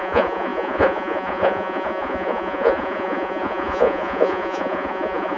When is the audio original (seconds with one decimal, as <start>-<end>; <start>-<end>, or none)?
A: none